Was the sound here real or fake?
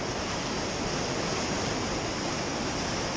real